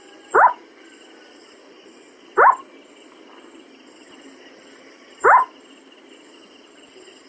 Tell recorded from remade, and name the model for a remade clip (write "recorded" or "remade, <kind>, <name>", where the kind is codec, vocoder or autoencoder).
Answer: recorded